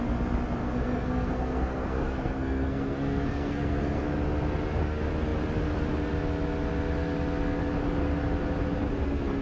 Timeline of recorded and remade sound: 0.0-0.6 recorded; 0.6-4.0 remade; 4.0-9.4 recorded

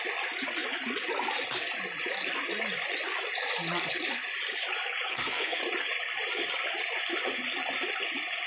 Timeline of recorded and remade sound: 0.0-5.1 recorded; 5.1-5.6 remade; 5.6-8.5 recorded